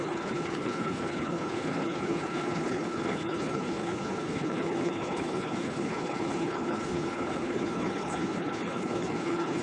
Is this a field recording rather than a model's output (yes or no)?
no